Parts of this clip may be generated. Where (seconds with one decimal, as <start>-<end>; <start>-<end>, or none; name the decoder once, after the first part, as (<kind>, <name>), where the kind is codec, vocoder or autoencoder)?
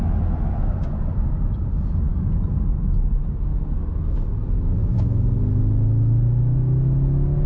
4.8-5.4 (vocoder, BigVGAN v2)